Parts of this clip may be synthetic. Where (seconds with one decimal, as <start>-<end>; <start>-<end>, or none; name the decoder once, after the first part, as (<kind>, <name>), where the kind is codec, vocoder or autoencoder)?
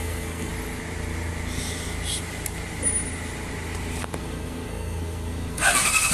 0.0-0.5 (codec, SNAC); 4.2-6.1